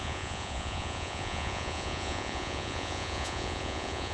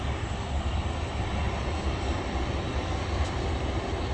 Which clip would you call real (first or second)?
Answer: second